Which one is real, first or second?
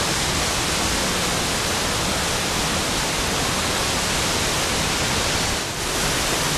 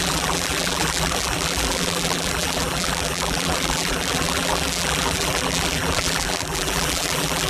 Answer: first